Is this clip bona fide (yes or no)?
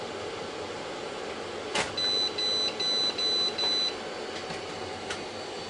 yes